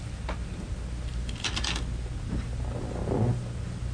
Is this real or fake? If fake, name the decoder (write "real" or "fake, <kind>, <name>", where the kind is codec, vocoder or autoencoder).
real